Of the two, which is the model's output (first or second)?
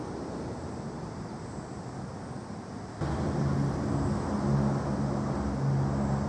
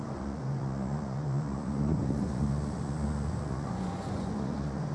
second